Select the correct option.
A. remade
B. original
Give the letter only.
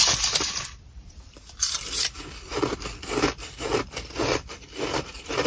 A